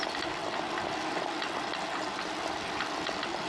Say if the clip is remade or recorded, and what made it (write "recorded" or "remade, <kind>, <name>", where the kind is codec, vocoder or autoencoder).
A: recorded